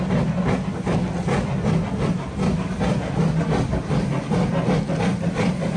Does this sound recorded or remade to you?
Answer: recorded